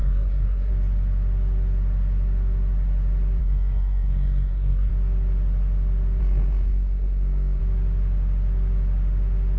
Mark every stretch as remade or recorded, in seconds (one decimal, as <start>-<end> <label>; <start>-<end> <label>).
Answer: 0.0-0.7 remade; 0.7-3.4 recorded; 3.4-4.9 remade; 4.9-6.2 recorded; 6.2-7.6 remade; 7.6-9.6 recorded